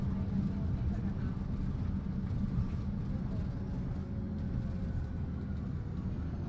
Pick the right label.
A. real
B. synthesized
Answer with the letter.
A